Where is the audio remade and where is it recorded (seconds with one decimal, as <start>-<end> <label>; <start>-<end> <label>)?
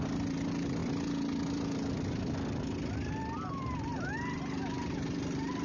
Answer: 0.0-5.6 remade